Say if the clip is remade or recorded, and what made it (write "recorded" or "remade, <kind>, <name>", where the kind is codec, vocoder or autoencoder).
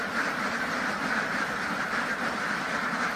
remade, vocoder, BigVGAN v2